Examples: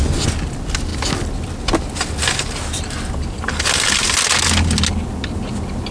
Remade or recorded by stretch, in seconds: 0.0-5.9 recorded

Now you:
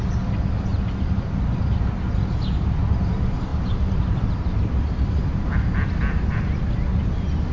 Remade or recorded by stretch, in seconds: 0.0-5.3 recorded; 5.3-6.6 remade; 6.6-7.5 recorded

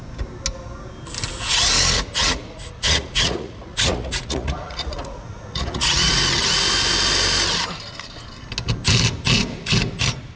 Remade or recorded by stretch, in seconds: 0.0-2.2 recorded; 2.2-6.1 remade; 6.1-10.4 recorded

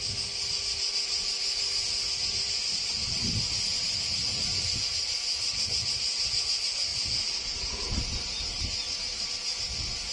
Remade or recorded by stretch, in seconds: 0.0-10.1 recorded

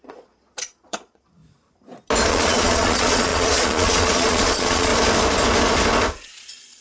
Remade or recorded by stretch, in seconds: 0.0-1.4 remade; 1.4-2.3 recorded; 2.3-4.9 remade; 4.9-6.1 recorded; 6.1-6.8 remade